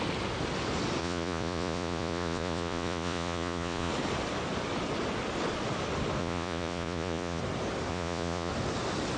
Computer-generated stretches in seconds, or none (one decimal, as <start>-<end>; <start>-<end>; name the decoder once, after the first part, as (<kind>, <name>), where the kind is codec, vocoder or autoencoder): 1.0-3.9 (vocoder, Vocos); 6.2-7.4; 7.9-8.5